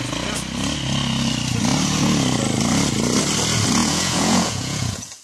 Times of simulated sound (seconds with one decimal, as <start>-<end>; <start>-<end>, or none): 3.8-5.2